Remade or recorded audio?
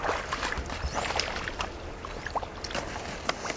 recorded